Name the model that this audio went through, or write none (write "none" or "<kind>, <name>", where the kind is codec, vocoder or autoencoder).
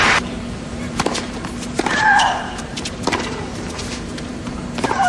vocoder, BigVGAN v2